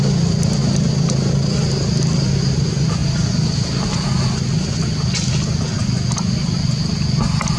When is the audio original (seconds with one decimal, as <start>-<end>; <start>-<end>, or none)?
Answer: 0.0-7.6